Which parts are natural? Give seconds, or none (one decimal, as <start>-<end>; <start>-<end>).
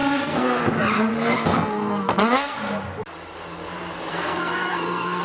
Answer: 0.6-1.1; 2.6-4.1